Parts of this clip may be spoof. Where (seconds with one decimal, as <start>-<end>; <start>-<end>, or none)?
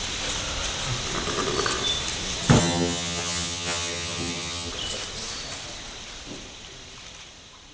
2.6-4.7